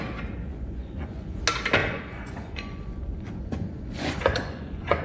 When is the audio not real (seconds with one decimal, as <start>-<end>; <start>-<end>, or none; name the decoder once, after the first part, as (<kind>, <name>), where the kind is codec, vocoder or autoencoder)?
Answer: 0.5-1.4 (vocoder, Vocos); 1.8-5.0